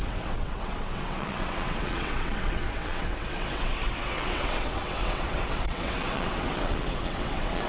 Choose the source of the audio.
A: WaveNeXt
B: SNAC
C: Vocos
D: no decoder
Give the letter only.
A